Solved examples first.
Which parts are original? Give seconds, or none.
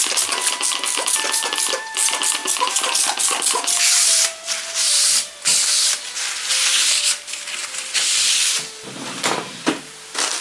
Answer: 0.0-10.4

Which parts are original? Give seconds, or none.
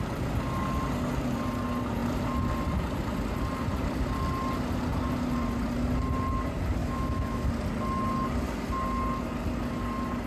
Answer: 0.0-6.8; 7.5-10.3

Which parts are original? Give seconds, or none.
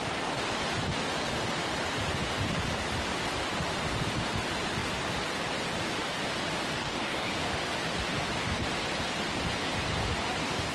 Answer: 0.0-6.8; 7.3-10.7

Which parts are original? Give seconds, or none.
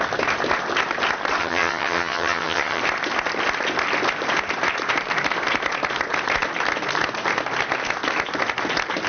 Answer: 0.0-1.4; 2.8-9.1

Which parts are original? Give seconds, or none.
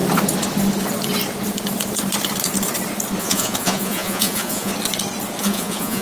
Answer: 0.0-3.2; 4.7-5.4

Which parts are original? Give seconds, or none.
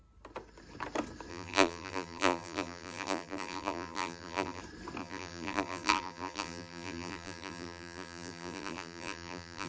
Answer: 0.0-1.3; 4.6-5.0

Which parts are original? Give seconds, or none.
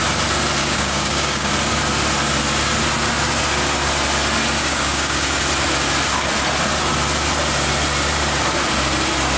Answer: 0.0-0.6; 1.5-4.6; 5.4-9.4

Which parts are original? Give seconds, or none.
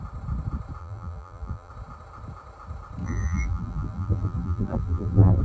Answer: 0.0-0.8; 1.7-3.0